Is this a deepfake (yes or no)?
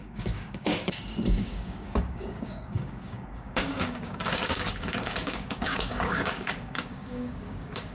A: yes